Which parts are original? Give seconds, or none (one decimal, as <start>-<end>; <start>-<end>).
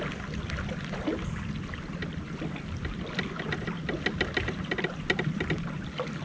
0.0-6.2